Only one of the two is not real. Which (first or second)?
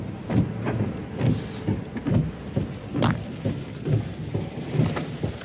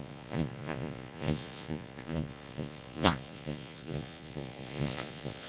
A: second